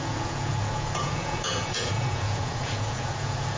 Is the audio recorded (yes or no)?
no